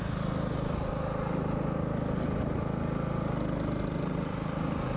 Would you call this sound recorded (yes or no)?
yes